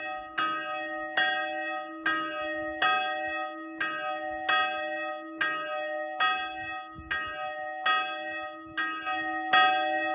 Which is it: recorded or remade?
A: recorded